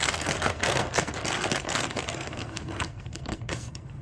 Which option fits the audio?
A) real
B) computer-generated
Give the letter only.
B